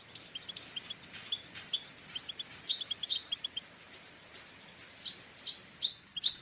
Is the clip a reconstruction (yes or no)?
no